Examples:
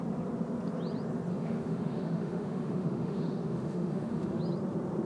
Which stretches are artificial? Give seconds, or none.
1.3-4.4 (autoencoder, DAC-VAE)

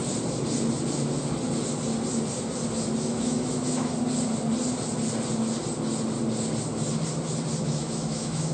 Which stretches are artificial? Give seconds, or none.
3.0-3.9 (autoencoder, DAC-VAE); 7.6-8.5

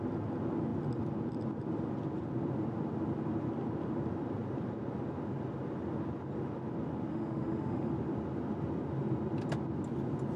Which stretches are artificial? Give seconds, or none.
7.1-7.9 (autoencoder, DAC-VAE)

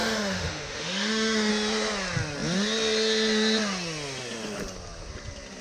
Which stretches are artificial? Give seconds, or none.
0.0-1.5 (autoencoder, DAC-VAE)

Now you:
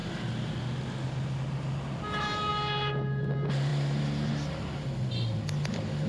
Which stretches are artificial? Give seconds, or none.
none